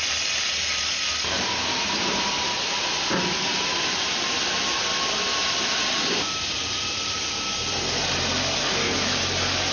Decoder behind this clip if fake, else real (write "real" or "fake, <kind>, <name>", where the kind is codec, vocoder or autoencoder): fake, vocoder, BigVGAN v2